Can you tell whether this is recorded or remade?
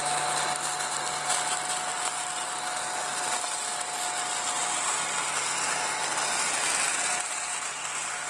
recorded